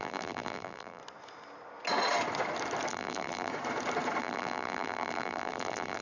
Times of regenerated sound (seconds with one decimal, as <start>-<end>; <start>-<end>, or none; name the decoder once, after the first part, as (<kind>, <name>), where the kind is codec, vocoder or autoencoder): 0.0-1.0 (vocoder, BigVGAN v2); 2.9-3.5; 4.2-6.0